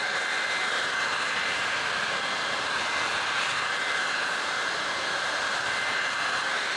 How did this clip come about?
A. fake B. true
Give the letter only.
B